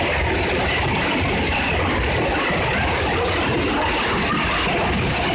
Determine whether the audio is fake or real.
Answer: real